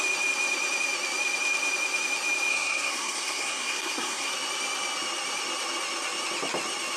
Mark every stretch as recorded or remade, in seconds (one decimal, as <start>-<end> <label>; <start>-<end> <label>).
0.0-2.5 recorded; 2.5-4.3 remade; 4.3-7.0 recorded